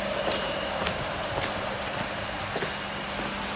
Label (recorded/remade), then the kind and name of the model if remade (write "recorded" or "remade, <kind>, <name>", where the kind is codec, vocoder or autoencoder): recorded